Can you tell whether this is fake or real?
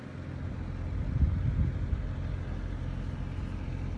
real